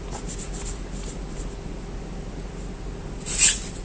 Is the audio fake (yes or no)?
no